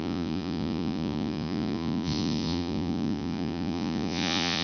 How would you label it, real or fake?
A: fake